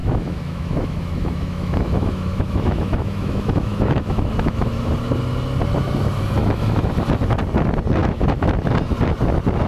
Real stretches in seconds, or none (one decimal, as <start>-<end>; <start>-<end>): 4.9-6.4; 6.9-8.0; 8.5-9.7